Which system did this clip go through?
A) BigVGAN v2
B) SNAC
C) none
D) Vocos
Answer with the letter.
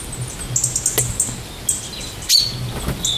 C